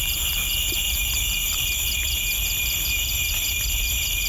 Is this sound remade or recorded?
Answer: remade